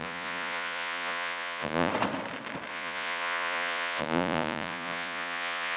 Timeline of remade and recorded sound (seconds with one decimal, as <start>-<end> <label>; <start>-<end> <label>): 0.0-1.9 remade; 1.9-2.7 recorded; 2.7-5.8 remade